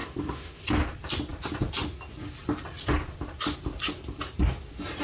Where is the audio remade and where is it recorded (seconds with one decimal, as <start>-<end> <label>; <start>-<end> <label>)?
0.0-0.6 remade; 0.6-5.0 recorded

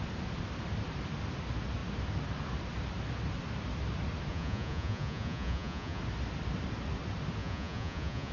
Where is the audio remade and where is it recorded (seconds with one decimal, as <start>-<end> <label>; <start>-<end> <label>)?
0.0-4.3 recorded; 4.3-6.0 remade; 6.0-7.4 recorded; 7.4-8.3 remade

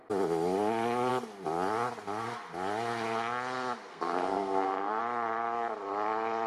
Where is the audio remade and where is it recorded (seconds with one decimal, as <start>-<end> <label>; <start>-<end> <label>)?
0.0-3.9 recorded; 3.9-5.0 remade; 5.0-6.5 recorded

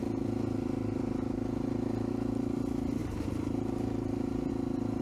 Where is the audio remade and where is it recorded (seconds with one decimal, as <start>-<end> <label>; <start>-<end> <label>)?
0.0-3.0 recorded; 3.0-4.5 remade; 4.5-5.0 recorded